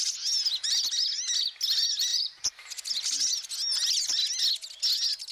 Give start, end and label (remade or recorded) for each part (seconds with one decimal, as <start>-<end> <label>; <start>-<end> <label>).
0.0-5.3 recorded